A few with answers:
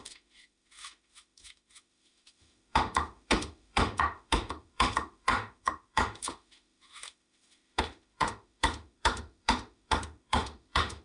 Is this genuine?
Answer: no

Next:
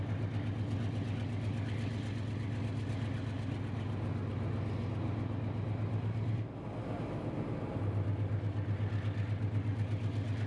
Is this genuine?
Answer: yes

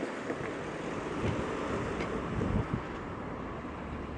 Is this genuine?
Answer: yes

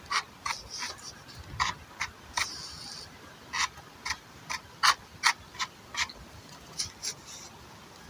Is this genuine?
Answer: yes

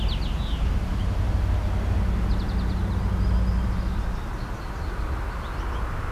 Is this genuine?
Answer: yes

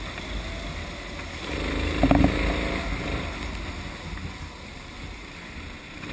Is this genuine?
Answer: yes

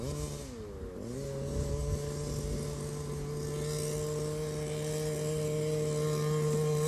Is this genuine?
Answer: yes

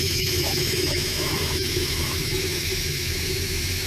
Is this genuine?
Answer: no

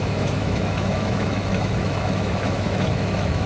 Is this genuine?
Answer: no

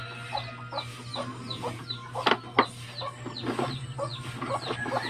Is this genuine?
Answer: yes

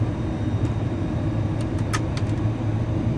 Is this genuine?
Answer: yes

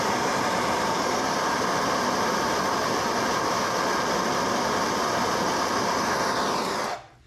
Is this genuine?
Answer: yes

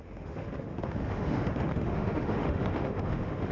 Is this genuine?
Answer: no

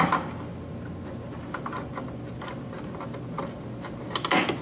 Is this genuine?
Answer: yes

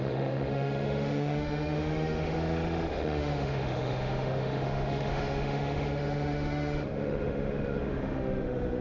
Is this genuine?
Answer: no